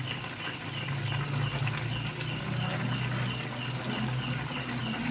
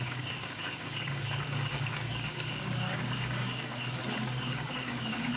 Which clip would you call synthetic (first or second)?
second